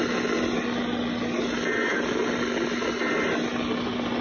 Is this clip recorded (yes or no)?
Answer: yes